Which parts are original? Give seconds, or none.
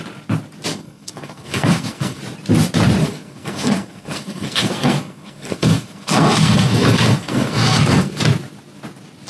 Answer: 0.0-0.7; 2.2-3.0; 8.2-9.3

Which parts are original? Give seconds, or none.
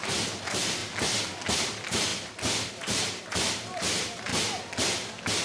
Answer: 0.8-1.6; 2.1-2.7; 4.3-5.4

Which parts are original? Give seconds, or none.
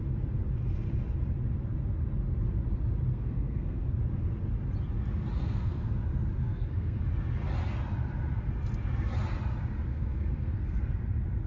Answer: 0.0-3.1; 3.9-5.4; 5.9-6.4; 7.0-9.9; 10.8-11.5